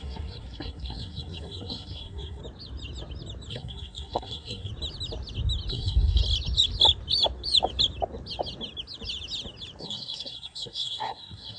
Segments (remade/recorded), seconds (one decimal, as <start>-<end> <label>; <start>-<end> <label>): 0.0-2.4 remade; 2.4-3.5 recorded; 3.5-4.7 remade; 4.7-5.7 recorded; 5.7-6.2 remade; 6.2-9.8 recorded; 9.8-11.6 remade

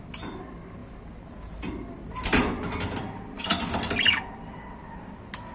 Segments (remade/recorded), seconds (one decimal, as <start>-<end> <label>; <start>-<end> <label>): 0.0-5.5 recorded

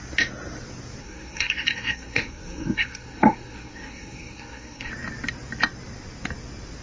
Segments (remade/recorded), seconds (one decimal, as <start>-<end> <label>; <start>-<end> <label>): 0.0-1.0 recorded; 1.0-4.9 remade; 4.9-6.8 recorded

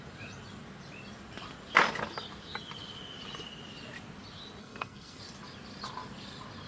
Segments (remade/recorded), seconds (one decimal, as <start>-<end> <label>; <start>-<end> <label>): 0.0-4.6 recorded; 4.6-5.2 remade; 5.2-6.7 recorded